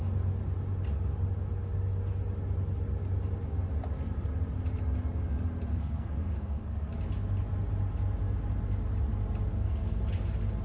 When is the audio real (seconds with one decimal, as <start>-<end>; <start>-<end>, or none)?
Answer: 0.0-5.7; 6.9-9.5; 10.0-10.6